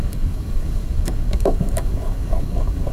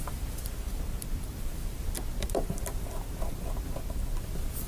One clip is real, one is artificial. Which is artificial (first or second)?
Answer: first